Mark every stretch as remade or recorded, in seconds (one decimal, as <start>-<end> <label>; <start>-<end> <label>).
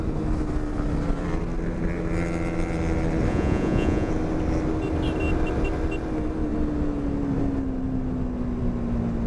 0.0-3.3 recorded; 3.3-4.1 remade; 4.1-9.3 recorded